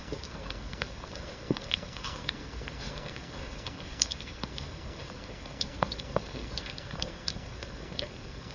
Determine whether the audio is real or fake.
fake